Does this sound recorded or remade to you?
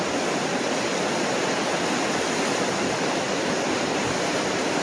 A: recorded